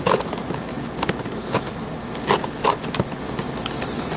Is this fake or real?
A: real